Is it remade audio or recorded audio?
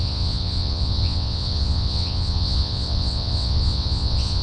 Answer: remade